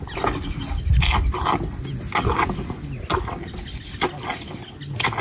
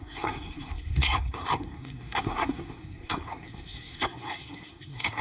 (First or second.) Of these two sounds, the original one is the first